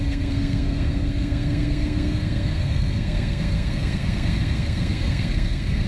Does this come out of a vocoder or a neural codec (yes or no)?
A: yes